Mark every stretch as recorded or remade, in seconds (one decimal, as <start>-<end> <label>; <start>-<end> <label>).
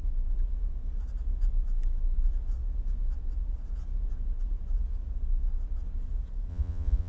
0.0-6.5 recorded; 6.5-7.1 remade